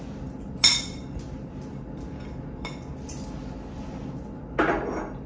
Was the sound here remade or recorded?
recorded